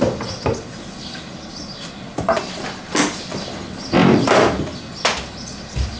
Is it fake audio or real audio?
real